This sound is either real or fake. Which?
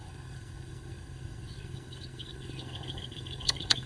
fake